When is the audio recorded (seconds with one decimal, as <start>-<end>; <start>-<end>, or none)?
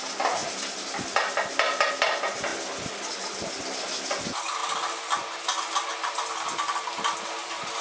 0.0-7.8